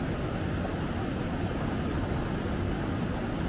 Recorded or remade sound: recorded